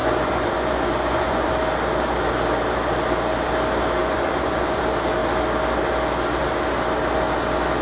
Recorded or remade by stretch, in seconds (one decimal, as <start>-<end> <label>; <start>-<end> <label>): 0.0-1.5 remade; 1.5-4.0 recorded; 4.0-4.8 remade; 4.8-7.8 recorded